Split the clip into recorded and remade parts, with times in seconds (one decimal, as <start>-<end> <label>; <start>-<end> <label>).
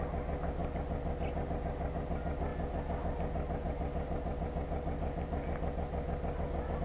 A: 0.0-6.8 recorded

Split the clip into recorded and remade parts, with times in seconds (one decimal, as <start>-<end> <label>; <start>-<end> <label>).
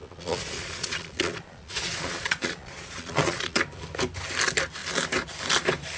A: 0.0-3.6 remade; 3.6-6.0 recorded